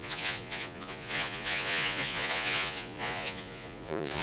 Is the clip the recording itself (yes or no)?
no